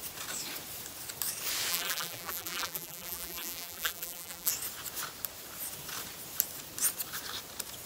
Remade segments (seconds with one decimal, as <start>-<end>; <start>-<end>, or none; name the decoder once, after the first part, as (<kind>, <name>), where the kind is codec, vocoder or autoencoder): 1.7-4.5 (vocoder, BigVGAN v2)